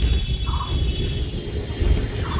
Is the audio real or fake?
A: real